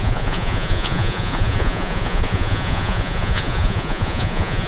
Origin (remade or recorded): remade